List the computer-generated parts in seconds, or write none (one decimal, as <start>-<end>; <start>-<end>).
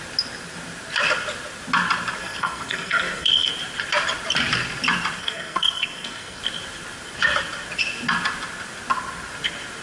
2.2-3.5; 5.2-6.4